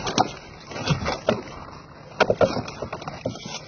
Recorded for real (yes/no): yes